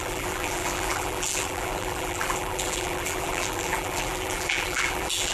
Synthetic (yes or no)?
yes